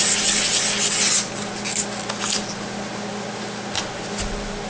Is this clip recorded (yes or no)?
yes